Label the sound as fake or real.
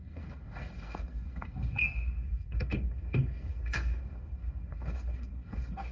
fake